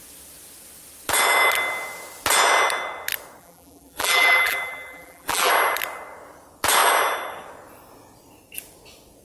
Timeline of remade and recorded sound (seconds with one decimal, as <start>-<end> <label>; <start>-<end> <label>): 0.0-3.4 recorded; 3.4-5.5 remade; 5.5-9.2 recorded

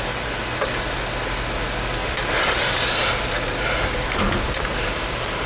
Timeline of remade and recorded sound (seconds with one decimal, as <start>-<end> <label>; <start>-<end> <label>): 0.0-2.0 recorded; 2.0-5.5 remade

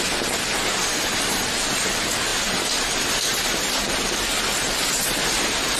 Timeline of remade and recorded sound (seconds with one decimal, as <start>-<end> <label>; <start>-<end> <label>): 0.0-5.8 recorded

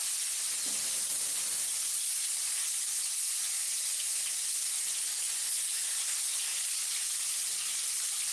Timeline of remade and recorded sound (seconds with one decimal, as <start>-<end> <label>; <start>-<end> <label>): 0.0-1.7 recorded; 1.7-2.5 remade; 2.5-3.9 recorded; 3.9-4.6 remade; 4.6-6.5 recorded; 6.5-7.4 remade; 7.4-8.3 recorded

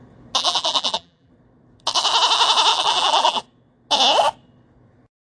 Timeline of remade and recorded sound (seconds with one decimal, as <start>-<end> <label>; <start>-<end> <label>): 0.0-0.4 recorded; 0.4-1.3 remade; 1.3-2.7 recorded; 2.7-3.4 remade; 3.4-5.2 recorded

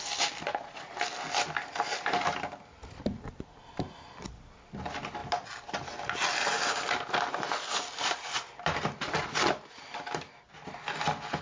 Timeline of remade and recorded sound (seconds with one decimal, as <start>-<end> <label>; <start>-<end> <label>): 0.0-11.4 recorded

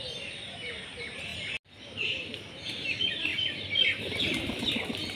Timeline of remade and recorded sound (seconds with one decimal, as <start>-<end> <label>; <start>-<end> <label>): 0.0-5.2 recorded

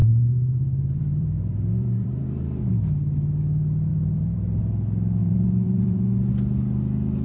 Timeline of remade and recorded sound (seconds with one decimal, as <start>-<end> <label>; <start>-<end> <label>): 0.0-2.7 remade; 2.7-3.9 recorded; 3.9-4.6 remade; 4.6-5.2 recorded; 5.2-6.3 remade; 6.3-7.2 recorded